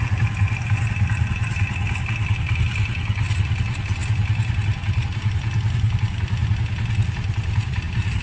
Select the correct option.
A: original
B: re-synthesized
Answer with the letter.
A